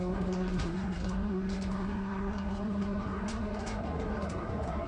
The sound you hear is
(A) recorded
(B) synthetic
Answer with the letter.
B